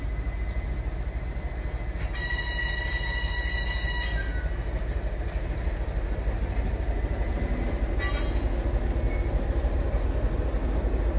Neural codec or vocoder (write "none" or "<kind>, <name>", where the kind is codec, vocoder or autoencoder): none